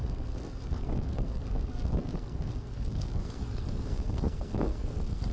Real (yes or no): no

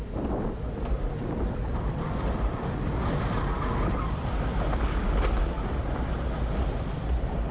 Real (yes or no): yes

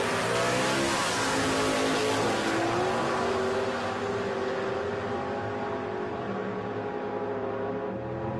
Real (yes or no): yes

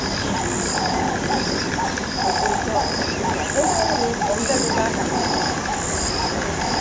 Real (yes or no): no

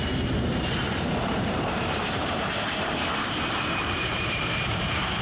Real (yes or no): no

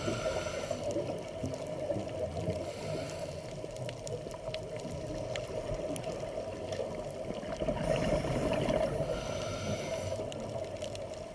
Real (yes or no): yes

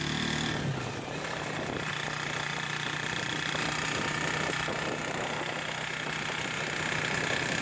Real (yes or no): yes